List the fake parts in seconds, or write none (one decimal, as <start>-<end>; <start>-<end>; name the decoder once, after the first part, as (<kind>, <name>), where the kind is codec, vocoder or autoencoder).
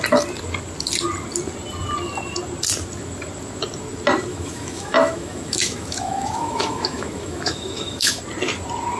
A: 4.3-8.2 (autoencoder, DAC-VAE)